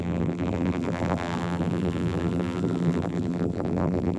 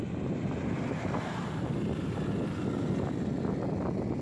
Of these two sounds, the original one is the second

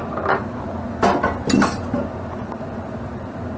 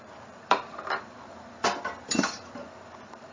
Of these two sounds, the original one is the first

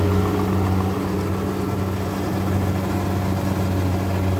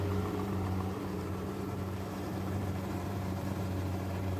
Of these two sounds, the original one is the first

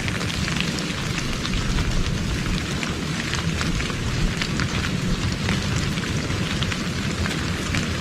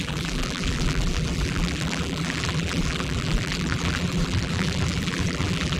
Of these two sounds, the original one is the first